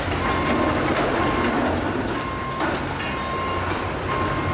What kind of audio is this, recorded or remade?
recorded